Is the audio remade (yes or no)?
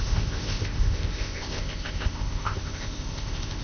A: yes